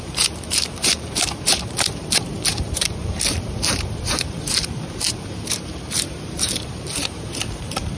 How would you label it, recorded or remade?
remade